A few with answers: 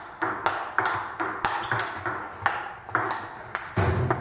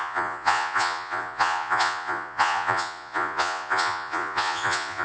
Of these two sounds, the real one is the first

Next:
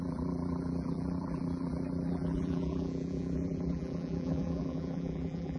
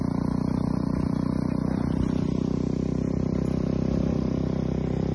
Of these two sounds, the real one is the second